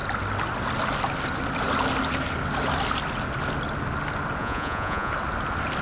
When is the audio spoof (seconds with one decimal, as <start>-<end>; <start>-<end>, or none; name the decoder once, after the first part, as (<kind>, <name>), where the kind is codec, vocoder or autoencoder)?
4.4-5.1 (vocoder, Vocos)